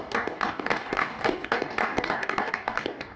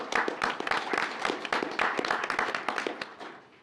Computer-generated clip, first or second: first